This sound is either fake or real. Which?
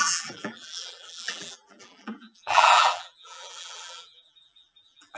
fake